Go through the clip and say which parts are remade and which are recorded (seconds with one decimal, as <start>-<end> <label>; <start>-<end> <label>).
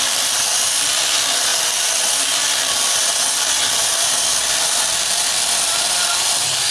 0.0-6.7 recorded